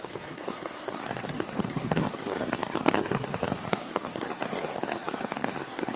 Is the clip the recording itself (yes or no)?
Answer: no